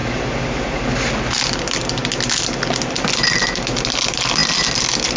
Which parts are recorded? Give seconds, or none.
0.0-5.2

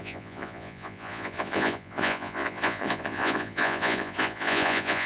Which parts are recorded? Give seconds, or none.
none

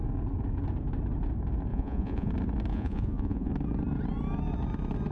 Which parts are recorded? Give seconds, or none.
0.0-1.7; 2.3-2.7; 3.5-5.1

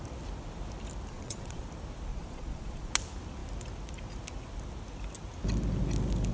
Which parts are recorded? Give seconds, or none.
0.0-1.1; 1.6-2.1; 2.9-6.3

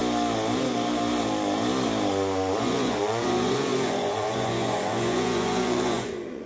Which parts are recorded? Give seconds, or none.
0.0-2.6

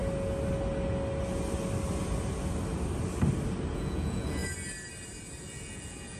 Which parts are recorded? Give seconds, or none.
0.0-3.7; 4.4-5.4